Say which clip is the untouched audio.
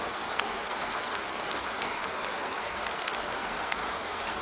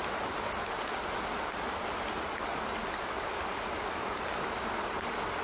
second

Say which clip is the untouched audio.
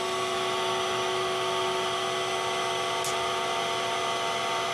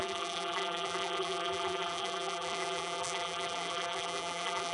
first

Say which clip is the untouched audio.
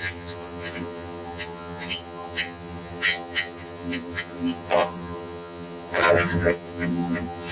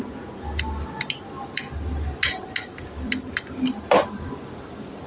second